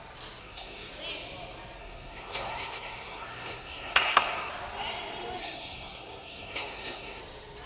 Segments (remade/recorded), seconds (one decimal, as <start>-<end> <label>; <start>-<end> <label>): 0.0-0.4 recorded; 0.4-0.9 remade; 0.9-1.8 recorded; 1.8-4.5 remade; 4.5-5.4 recorded; 5.4-7.2 remade; 7.2-7.7 recorded